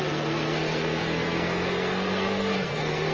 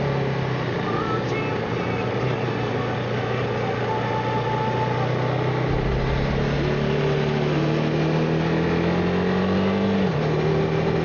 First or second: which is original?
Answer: second